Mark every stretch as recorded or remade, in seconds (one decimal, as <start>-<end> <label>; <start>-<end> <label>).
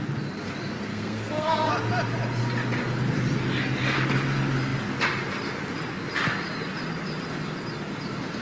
0.0-0.9 recorded; 0.9-1.7 remade; 1.7-8.4 recorded